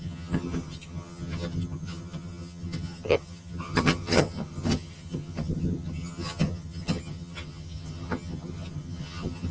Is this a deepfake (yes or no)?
yes